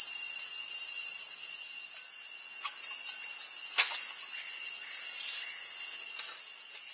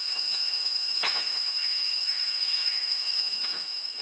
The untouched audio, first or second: first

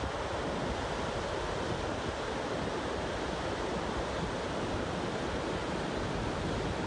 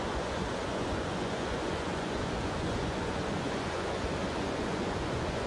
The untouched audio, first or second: first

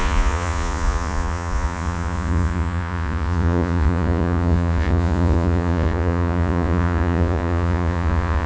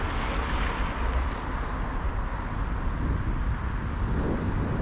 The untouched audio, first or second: second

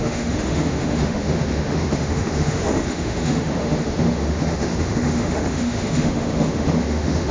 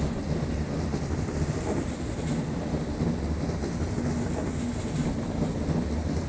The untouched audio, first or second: second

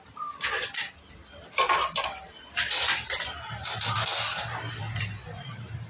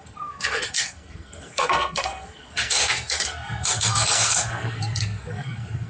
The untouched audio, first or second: first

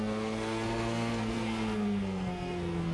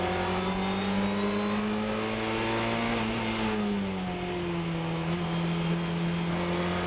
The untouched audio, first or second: second